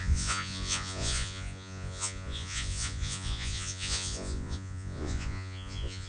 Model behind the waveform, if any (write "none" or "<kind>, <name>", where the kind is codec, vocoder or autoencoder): vocoder, Vocos